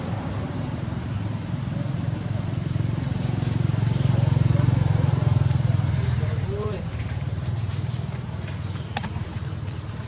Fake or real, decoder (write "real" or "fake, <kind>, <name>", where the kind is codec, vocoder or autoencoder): fake, vocoder, BigVGAN v2